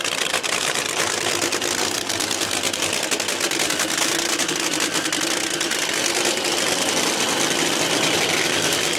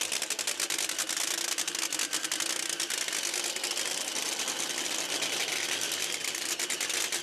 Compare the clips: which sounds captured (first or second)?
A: second